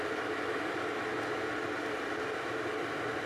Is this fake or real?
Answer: real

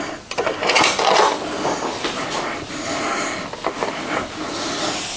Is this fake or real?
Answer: real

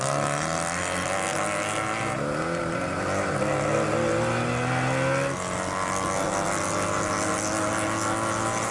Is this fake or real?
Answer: real